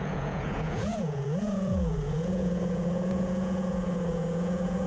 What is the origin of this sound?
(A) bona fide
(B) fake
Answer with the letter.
B